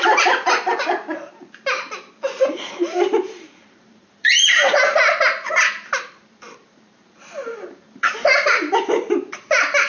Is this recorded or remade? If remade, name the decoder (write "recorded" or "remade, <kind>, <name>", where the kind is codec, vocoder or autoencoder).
remade, vocoder, BigVGAN v2